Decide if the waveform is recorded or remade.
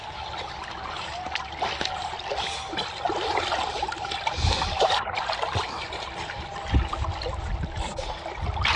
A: recorded